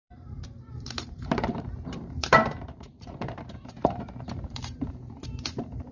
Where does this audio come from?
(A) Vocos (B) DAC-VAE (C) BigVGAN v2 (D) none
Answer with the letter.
C